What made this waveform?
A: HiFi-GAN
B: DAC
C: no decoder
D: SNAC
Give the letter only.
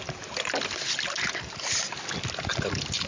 C